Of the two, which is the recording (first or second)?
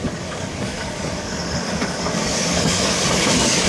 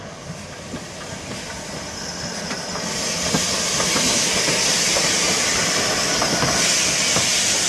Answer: second